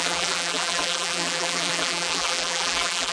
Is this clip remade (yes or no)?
yes